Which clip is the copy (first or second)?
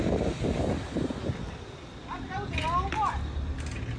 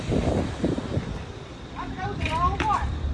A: second